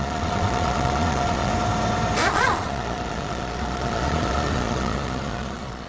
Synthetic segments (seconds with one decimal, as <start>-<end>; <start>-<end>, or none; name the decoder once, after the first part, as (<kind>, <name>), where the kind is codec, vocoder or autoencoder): 0.0-1.5 (vocoder, Vocos); 2.3-5.9